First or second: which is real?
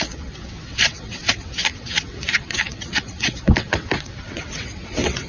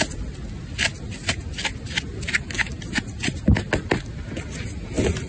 second